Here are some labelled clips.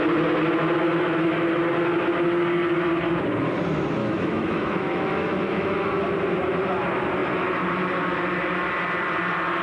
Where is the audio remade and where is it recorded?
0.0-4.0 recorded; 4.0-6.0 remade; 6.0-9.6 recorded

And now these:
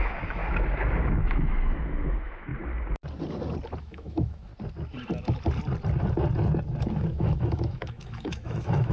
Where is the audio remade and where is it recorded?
0.0-0.4 remade; 0.4-1.2 recorded; 1.2-2.5 remade; 2.5-3.8 recorded; 3.8-4.5 remade; 4.5-6.8 recorded; 6.8-8.9 remade

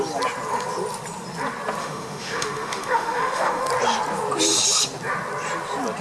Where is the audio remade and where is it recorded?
0.0-1.8 recorded; 1.8-3.7 remade; 3.7-6.0 recorded

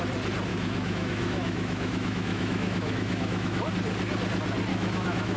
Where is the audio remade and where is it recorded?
0.0-0.5 recorded; 0.5-3.7 remade; 3.7-4.7 recorded; 4.7-5.4 remade

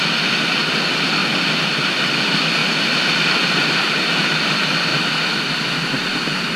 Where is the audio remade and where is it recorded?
0.0-6.6 recorded